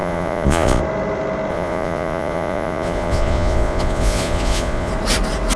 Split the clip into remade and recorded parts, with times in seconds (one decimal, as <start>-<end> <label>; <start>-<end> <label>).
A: 0.0-0.8 remade; 0.8-1.5 recorded; 1.5-4.9 remade; 4.9-5.6 recorded